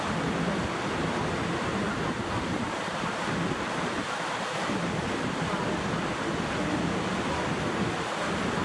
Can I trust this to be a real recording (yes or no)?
yes